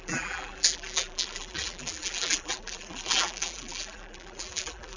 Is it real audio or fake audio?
fake